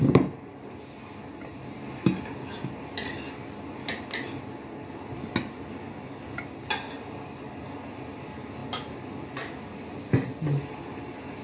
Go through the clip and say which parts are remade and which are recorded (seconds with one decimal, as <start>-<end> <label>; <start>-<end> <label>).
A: 0.0-11.4 recorded

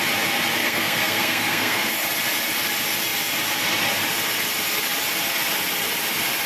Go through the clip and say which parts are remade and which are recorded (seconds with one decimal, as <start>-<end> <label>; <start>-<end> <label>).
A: 0.0-0.6 recorded; 0.6-1.9 remade; 1.9-6.5 recorded

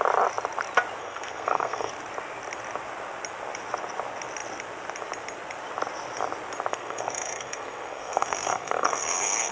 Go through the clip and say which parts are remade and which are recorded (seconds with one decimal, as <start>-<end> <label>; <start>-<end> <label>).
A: 0.0-1.0 recorded; 1.0-1.9 remade; 1.9-6.7 recorded; 6.7-9.5 remade